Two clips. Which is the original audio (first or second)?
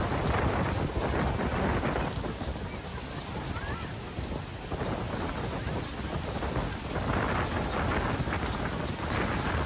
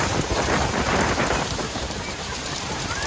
first